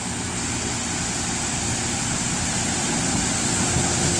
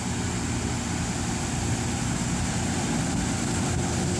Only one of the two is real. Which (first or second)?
first